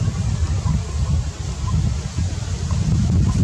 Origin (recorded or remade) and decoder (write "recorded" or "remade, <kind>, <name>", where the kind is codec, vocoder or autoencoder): recorded